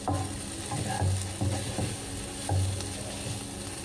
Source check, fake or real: real